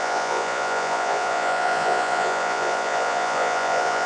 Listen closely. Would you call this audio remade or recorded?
remade